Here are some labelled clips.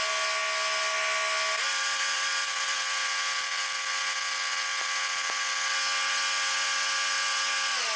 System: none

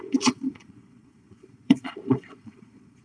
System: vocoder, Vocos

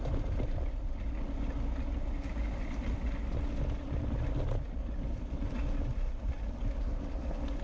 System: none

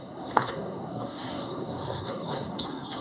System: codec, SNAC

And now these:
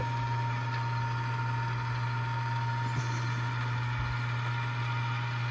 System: none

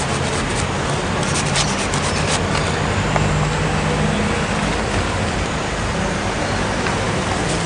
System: none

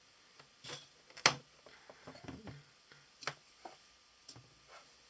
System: none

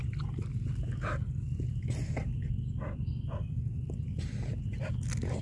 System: none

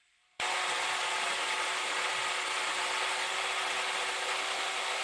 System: none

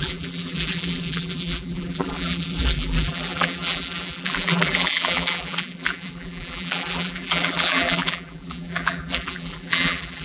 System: vocoder, BigVGAN v2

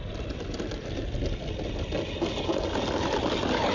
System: none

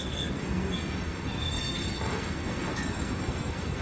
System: codec, SNAC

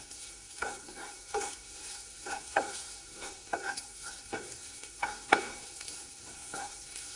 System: codec, SNAC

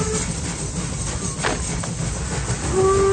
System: none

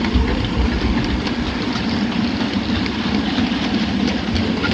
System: none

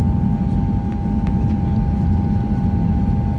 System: none